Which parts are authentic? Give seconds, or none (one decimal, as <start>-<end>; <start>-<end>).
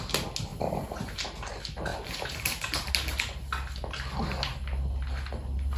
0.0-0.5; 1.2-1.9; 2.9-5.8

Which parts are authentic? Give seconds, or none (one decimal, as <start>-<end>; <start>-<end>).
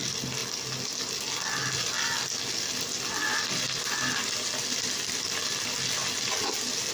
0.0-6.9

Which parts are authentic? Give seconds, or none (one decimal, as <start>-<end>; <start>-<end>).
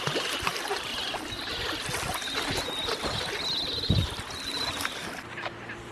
0.9-4.4; 5.0-5.9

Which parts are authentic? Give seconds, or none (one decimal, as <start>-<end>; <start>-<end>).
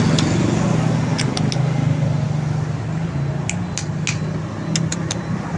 0.0-4.9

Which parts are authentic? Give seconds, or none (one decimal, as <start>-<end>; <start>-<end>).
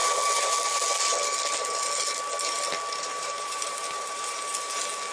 0.0-3.1; 4.4-5.1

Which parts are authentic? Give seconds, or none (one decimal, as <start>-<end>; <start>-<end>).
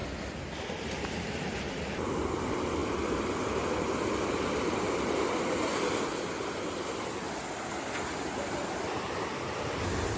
0.0-0.9; 2.8-8.0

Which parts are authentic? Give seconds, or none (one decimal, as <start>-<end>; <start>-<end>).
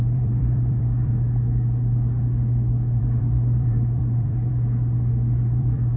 1.1-3.0; 4.5-5.6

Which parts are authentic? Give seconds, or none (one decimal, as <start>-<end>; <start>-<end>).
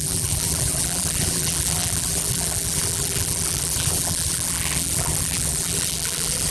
none